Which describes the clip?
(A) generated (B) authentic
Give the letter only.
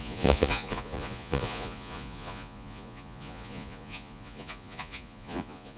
A